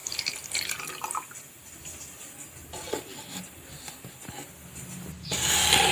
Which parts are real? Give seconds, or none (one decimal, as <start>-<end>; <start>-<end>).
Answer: 0.8-5.9